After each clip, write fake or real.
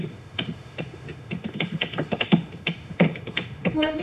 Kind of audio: fake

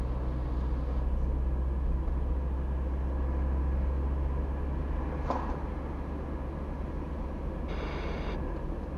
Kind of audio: real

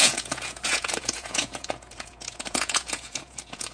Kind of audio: fake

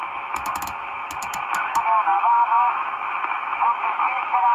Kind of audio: fake